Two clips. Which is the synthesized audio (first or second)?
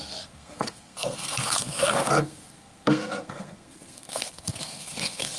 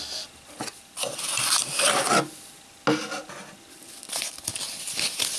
first